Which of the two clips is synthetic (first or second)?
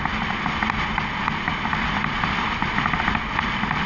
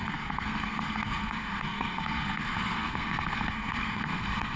second